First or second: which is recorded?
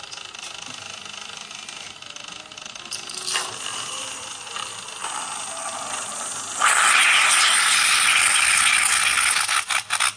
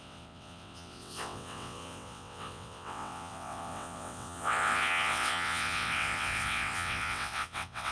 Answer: first